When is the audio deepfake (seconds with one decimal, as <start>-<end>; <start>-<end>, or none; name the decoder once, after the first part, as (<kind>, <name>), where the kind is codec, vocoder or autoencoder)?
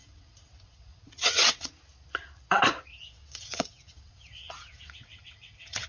0.0-1.7 (vocoder, WaveNeXt); 2.9-5.9